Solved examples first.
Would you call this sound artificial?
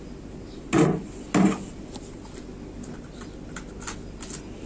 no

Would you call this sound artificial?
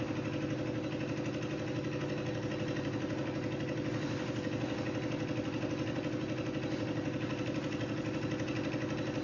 no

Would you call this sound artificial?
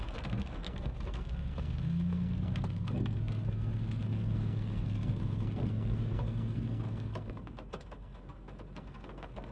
yes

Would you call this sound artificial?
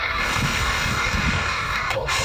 yes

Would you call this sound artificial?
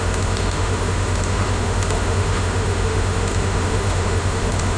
yes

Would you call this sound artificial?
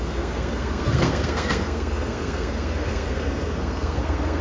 yes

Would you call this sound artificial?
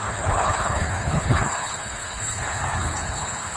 yes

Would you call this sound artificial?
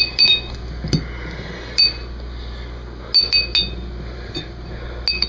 no